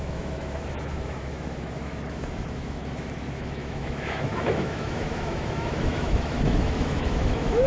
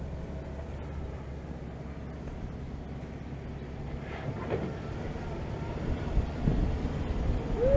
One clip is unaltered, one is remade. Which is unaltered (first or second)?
second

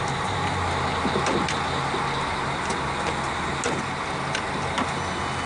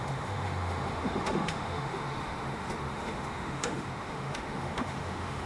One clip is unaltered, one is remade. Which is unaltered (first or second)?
first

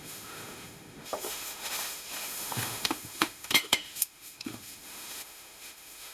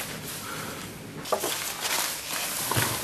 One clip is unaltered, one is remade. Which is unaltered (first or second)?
second